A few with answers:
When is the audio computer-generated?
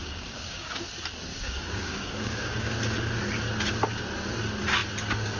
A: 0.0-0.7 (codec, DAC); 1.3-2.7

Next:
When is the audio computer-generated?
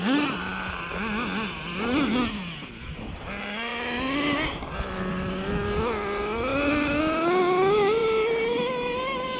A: none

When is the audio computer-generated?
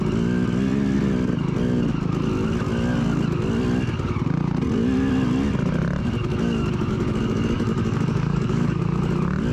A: 6.3-8.8 (codec, DAC)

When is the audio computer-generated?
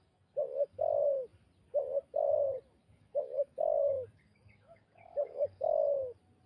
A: 0.0-0.7 (codec, DAC); 2.8-5.8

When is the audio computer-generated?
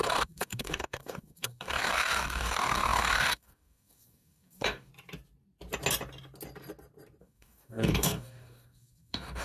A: 0.0-4.9 (codec, DAC); 7.2-9.4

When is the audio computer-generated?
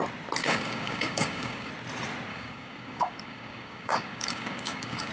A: 0.4-1.7 (codec, DAC); 2.3-5.1